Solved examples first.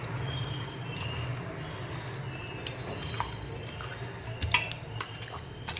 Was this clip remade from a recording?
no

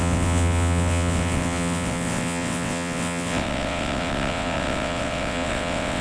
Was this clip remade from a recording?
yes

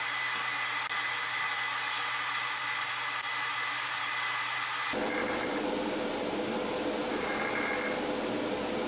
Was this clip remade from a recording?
no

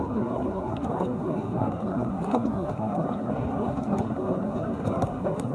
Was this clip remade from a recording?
yes